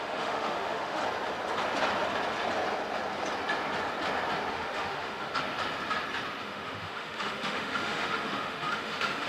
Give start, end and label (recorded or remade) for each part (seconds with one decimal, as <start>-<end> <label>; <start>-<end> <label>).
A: 0.0-1.0 remade; 1.0-4.5 recorded; 4.5-5.3 remade; 5.3-6.4 recorded; 6.4-9.3 remade